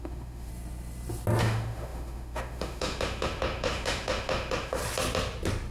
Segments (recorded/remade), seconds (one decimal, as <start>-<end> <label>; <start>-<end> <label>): 0.0-0.5 remade; 0.5-1.4 recorded; 1.4-4.8 remade; 4.8-5.7 recorded

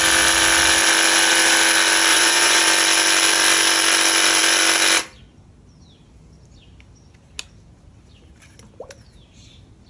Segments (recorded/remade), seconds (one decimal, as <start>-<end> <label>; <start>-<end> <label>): 0.0-2.1 recorded; 2.1-2.6 remade; 2.6-9.9 recorded

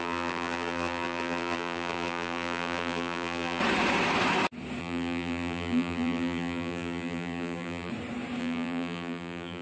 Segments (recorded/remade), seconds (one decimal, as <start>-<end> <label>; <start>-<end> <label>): 0.0-3.6 remade; 3.6-4.8 recorded; 4.8-7.9 remade; 7.9-8.4 recorded; 8.4-9.6 remade

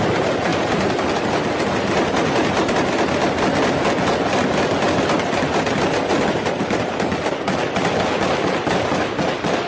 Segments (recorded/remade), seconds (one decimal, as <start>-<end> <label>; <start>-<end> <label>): 0.0-9.7 recorded